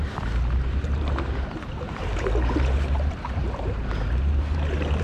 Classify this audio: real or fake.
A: fake